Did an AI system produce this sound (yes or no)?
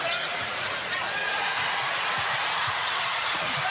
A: yes